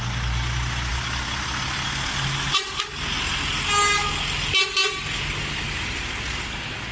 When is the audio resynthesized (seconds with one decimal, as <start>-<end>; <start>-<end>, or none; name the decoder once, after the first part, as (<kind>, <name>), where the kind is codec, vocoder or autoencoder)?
none